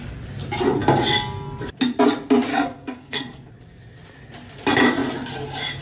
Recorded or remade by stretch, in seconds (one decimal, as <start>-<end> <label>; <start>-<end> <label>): 0.0-2.5 recorded; 2.5-3.5 remade; 3.5-5.8 recorded